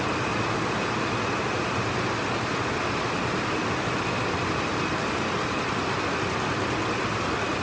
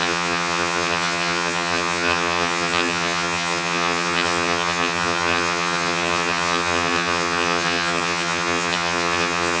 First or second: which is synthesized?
second